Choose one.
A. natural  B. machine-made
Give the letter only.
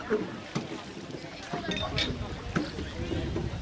A